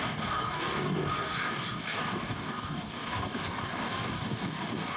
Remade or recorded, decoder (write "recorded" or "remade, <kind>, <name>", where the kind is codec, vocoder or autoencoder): remade, codec, DAC